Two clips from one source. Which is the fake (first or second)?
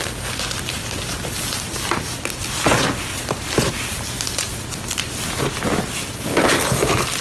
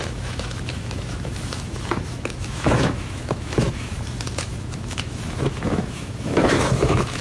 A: second